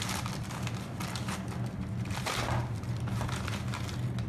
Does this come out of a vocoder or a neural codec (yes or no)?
no